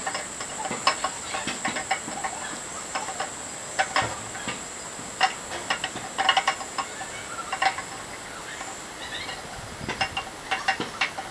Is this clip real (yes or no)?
yes